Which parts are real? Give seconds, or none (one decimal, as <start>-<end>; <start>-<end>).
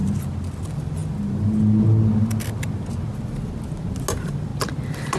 0.0-0.6; 1.0-4.1; 4.5-5.2